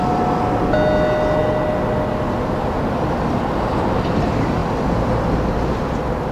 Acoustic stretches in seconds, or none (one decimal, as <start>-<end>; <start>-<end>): 0.0-4.6